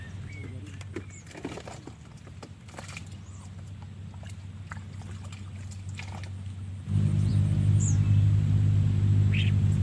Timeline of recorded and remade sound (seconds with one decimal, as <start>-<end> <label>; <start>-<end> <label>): 0.0-9.8 recorded